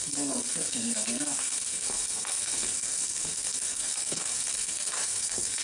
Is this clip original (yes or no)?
no